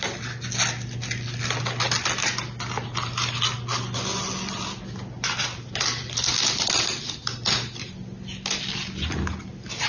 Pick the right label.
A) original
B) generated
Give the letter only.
A